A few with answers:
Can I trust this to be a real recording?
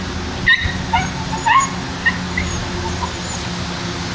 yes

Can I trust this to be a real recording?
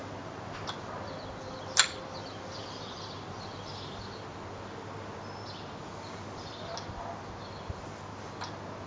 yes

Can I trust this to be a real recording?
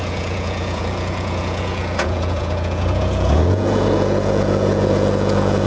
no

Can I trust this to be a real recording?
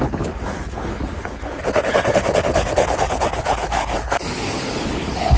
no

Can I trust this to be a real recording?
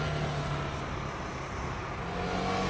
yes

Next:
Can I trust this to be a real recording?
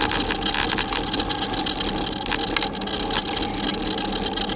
yes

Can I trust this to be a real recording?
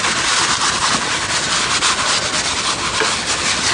yes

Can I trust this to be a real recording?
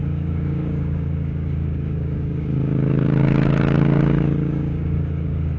no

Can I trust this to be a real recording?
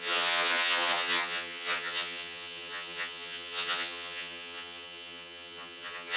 no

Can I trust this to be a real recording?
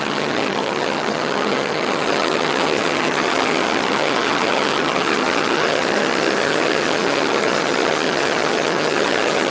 no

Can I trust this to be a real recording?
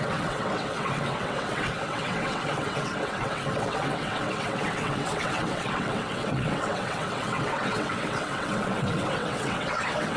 no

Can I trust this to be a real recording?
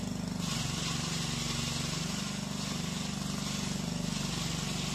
yes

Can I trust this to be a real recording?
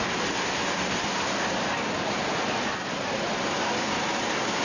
yes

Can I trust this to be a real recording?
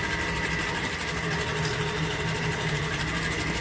yes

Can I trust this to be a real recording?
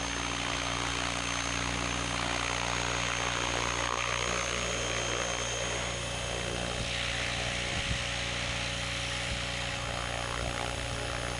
yes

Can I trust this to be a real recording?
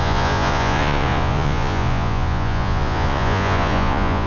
no